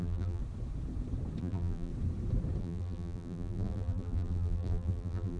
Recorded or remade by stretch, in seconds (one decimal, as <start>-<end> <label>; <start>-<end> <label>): 0.0-0.4 remade; 0.4-1.4 recorded; 1.4-1.9 remade; 1.9-2.6 recorded; 2.6-5.4 remade